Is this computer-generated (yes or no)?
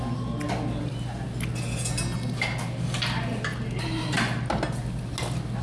no